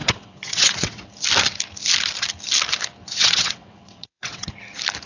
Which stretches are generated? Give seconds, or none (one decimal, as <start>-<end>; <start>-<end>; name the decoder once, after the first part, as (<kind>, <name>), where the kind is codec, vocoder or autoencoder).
0.0-1.1 (vocoder, WaveNeXt); 3.0-4.5